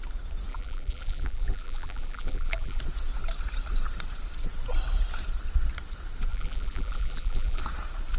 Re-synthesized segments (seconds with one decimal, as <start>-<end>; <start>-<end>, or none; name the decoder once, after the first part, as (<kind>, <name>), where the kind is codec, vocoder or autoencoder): 0.5-2.8 (vocoder, BigVGAN v2); 6.3-7.6